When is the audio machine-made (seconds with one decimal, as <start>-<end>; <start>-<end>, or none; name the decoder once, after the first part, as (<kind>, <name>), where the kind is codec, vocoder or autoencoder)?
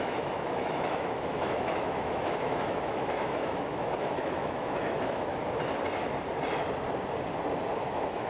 0.0-5.4 (autoencoder, DAC-VAE); 7.8-8.3